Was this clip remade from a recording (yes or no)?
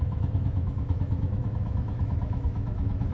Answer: yes